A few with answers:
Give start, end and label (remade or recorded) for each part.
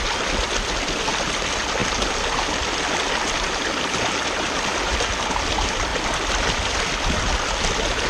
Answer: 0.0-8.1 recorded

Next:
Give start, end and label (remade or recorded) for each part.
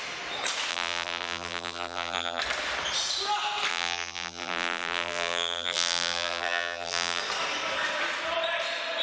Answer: 0.0-0.7 recorded; 0.7-2.4 remade; 2.4-3.7 recorded; 3.7-7.2 remade; 7.2-9.0 recorded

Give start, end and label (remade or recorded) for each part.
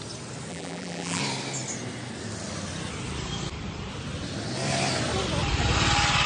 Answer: 0.0-0.5 recorded; 0.5-1.2 remade; 1.2-6.3 recorded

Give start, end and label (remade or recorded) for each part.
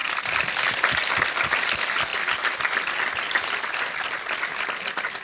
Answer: 0.0-5.2 recorded